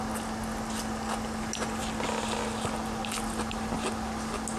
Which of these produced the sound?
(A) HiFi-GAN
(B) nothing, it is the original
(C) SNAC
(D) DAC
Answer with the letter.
B